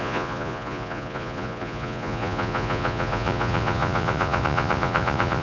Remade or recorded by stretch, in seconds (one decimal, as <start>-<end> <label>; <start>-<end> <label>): 0.0-5.4 remade